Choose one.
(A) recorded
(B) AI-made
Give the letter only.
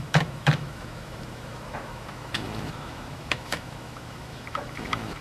B